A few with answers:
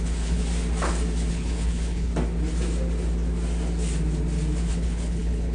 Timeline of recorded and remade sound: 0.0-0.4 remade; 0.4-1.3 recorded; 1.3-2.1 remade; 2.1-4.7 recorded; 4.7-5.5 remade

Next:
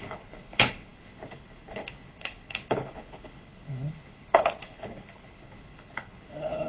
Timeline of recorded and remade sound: 0.0-6.7 remade